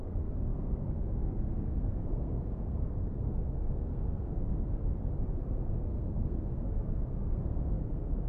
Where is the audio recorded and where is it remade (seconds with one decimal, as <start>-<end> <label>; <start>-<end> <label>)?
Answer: 0.0-4.8 remade; 4.8-5.4 recorded; 5.4-8.3 remade